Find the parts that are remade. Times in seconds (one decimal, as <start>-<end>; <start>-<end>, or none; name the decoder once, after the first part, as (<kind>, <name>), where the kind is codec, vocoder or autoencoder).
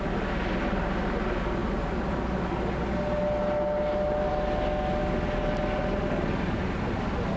none